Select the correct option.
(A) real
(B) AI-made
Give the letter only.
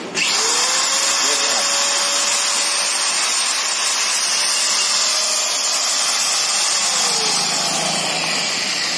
A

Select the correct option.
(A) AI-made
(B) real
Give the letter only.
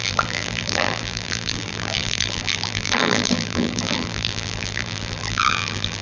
A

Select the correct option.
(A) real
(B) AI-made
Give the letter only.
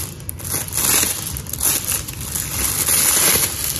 A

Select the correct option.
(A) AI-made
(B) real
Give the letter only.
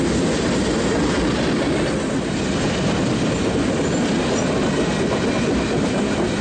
B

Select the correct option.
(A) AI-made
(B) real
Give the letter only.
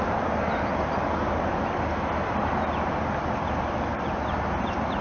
B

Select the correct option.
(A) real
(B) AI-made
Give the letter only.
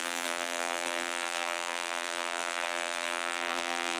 B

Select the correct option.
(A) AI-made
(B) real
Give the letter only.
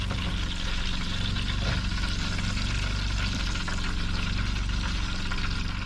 B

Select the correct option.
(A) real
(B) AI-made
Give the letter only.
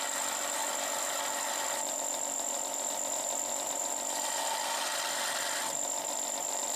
A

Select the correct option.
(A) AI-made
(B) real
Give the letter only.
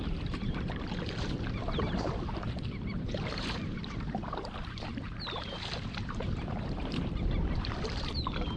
A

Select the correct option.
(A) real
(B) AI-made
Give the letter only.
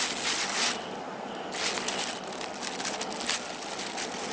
A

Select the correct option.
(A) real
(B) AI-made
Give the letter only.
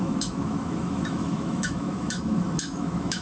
B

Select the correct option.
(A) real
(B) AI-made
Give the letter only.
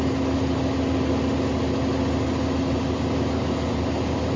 A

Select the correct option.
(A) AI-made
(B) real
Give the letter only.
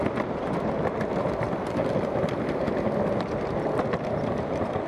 B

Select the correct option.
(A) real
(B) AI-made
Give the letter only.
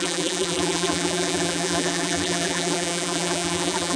B